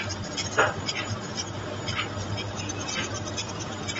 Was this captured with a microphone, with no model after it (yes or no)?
yes